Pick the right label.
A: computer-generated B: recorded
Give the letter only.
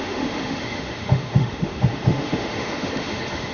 A